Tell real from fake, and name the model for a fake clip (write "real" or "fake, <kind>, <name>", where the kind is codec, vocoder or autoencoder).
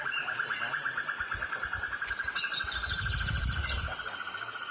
fake, vocoder, BigVGAN v2